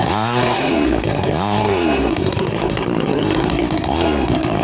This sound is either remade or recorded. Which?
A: remade